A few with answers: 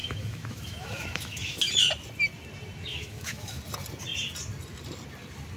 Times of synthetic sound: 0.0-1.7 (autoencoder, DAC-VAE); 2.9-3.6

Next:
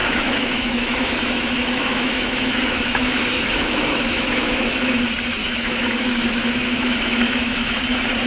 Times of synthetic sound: 0.0-5.0 (autoencoder, DAC-VAE); 5.4-7.8

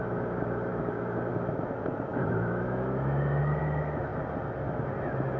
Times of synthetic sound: 0.0-4.1 (autoencoder, DAC-VAE); 5.0-5.4

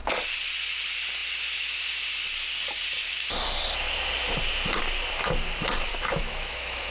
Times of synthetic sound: 5.9-6.9 (autoencoder, DAC-VAE)

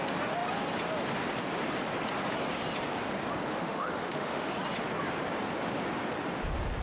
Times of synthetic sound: 3.5-4.5 (autoencoder, DAC-VAE)